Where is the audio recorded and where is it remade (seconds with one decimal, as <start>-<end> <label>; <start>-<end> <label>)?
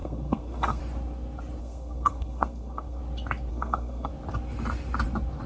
0.0-0.8 remade; 0.8-1.6 recorded; 1.6-3.0 remade; 3.0-3.5 recorded; 3.5-4.1 remade; 4.1-5.5 recorded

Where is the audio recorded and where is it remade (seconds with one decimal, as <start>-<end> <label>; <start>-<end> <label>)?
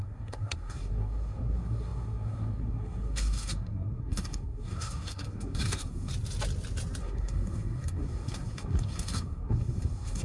0.0-6.1 remade; 6.1-7.0 recorded; 7.0-10.2 remade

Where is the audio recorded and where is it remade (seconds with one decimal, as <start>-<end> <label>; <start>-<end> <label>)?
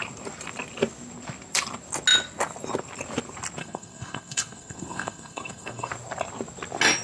0.0-3.6 recorded; 3.6-5.9 remade; 5.9-7.0 recorded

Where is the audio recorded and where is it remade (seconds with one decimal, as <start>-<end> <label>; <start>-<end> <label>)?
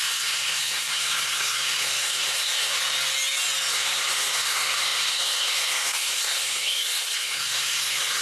0.0-2.8 remade; 2.8-3.7 recorded; 3.7-8.2 remade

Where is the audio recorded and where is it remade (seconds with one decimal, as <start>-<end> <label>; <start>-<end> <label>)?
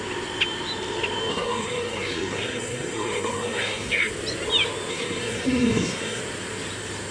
0.0-1.3 recorded; 1.3-4.1 remade; 4.1-4.9 recorded; 4.9-6.2 remade; 6.2-7.1 recorded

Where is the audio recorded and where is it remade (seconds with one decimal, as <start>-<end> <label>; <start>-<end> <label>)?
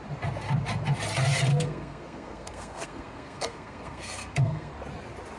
0.0-1.5 recorded; 1.5-4.7 remade; 4.7-5.4 recorded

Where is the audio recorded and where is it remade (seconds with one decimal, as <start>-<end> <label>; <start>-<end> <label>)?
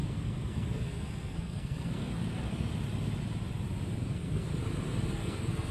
0.0-2.7 remade; 2.7-4.1 recorded; 4.1-4.5 remade; 4.5-5.1 recorded; 5.1-5.7 remade